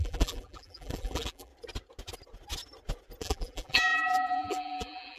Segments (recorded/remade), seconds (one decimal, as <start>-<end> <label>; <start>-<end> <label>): 0.0-1.5 remade; 1.5-3.2 recorded; 3.2-5.2 remade